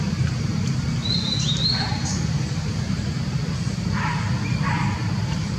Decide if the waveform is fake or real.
fake